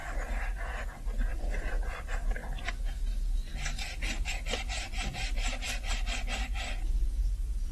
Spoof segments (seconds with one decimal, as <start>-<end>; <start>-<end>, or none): 1.3-2.4; 6.9-7.7